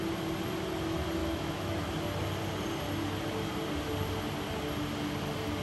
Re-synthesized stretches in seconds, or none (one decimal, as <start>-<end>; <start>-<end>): 1.2-1.8